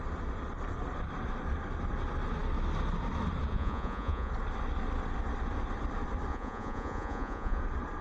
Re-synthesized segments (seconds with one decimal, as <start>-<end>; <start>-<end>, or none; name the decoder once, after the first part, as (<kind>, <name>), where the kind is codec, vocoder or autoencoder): 3.5-4.3 (vocoder, Vocos); 6.3-7.6